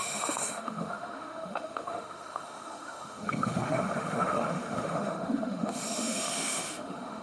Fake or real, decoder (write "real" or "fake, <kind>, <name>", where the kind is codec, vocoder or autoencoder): fake, autoencoder, DAC-VAE